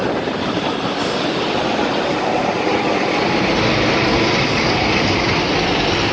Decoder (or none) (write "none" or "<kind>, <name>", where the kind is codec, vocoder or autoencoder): none